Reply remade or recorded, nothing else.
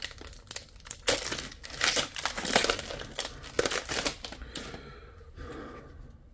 recorded